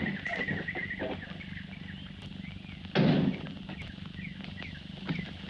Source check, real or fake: real